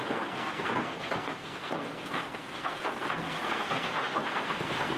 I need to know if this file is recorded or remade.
remade